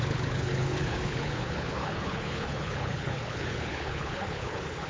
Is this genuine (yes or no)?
no